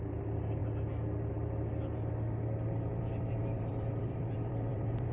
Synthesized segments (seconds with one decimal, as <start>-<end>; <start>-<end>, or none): 2.9-5.1